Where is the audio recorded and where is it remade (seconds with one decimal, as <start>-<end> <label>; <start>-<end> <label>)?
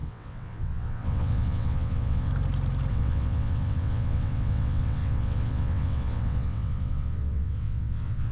0.0-2.3 remade; 2.3-2.9 recorded; 2.9-8.3 remade